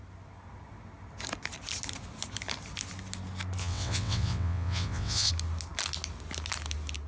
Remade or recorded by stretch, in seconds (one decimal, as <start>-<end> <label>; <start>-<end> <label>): 0.0-3.6 recorded; 3.6-5.3 remade; 5.3-7.1 recorded